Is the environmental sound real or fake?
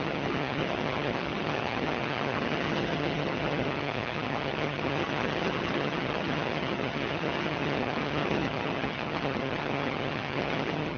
fake